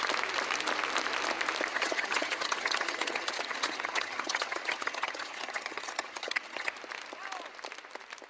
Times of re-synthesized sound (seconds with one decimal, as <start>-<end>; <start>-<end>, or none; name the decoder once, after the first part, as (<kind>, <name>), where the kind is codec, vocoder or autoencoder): 1.7-6.7 (vocoder, HiFi-GAN)